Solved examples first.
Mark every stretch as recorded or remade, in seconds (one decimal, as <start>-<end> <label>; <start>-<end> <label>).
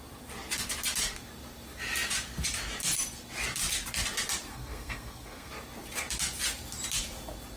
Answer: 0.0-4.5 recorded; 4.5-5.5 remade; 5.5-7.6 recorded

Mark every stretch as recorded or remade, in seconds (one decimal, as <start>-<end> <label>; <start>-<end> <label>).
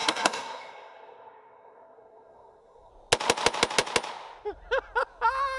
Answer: 0.0-2.9 remade; 2.9-5.6 recorded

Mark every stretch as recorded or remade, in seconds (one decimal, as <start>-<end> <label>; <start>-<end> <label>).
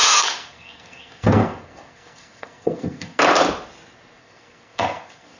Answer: 0.0-3.2 remade; 3.2-4.2 recorded; 4.2-5.4 remade